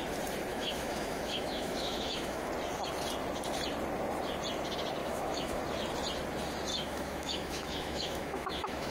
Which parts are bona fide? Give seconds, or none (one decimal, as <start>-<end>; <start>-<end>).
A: 0.0-0.5; 2.5-5.0; 5.6-6.7